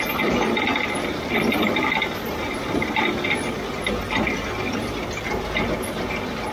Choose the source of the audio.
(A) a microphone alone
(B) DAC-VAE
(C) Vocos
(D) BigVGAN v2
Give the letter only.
A